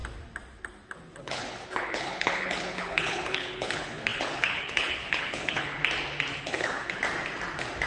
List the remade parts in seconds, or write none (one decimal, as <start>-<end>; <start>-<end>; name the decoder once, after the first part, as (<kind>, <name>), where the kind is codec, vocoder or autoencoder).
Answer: 1.2-5.8 (codec, HILCodec); 6.4-7.0